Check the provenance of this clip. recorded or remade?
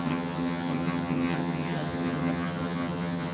remade